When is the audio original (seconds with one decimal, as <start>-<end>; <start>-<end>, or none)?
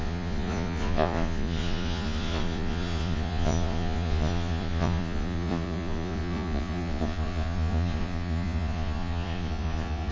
none